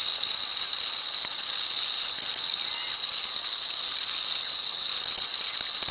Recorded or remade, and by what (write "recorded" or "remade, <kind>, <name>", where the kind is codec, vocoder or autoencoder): recorded